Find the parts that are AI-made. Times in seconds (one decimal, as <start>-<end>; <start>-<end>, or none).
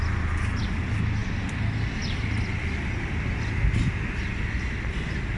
none